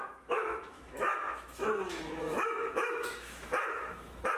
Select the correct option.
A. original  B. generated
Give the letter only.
B